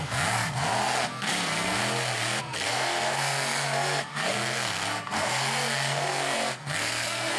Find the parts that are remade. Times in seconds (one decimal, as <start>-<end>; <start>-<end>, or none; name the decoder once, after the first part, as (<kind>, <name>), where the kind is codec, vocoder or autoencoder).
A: 0.0-1.8 (codec, SNAC); 2.4-7.4